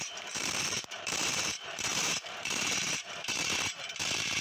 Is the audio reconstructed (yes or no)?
yes